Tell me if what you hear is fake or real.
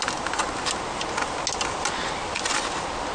real